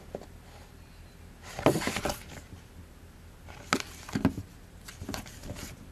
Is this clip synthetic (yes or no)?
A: no